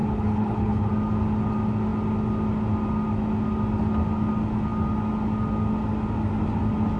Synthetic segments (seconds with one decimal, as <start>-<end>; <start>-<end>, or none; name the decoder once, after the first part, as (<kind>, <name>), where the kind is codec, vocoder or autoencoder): 0.0-0.9 (codec, HILCodec)